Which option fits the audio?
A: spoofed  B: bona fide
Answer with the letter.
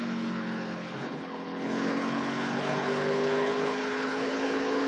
A